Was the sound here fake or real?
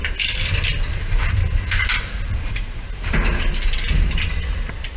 real